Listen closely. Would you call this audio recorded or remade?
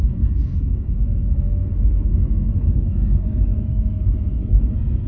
remade